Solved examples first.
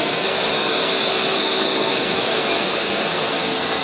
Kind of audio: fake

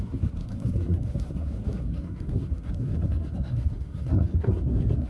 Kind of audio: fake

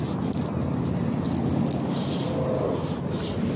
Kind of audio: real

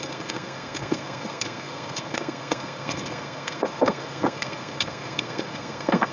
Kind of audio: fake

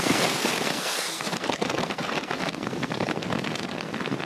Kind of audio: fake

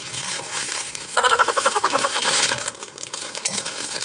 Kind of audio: fake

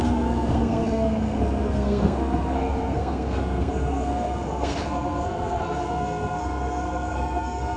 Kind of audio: fake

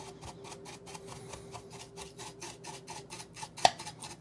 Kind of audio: real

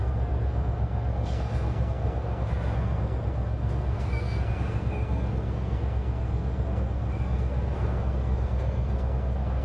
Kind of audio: fake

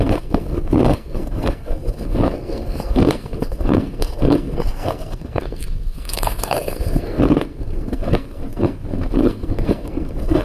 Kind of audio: fake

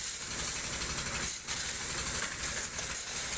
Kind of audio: real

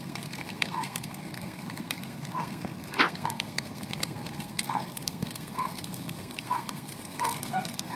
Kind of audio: fake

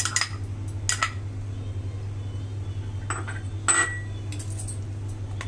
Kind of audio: real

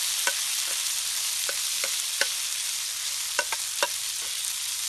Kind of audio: real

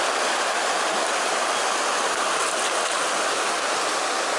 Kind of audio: real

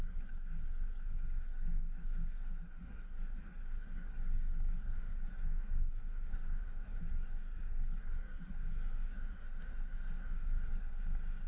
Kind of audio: fake